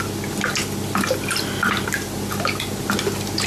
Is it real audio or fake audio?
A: real